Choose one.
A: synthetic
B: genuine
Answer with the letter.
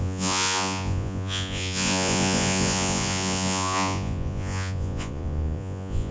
A